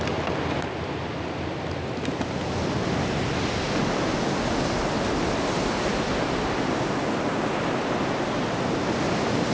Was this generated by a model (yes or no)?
no